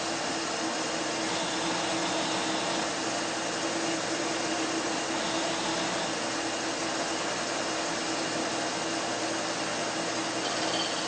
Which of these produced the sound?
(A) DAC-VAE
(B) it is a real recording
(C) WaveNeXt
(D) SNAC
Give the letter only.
B